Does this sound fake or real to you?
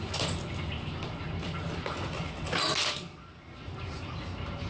real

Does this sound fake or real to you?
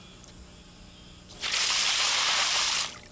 real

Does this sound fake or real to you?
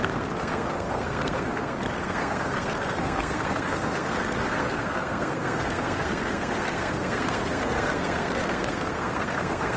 fake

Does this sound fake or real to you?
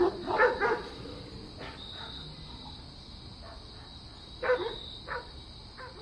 real